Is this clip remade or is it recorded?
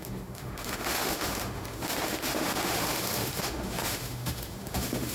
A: remade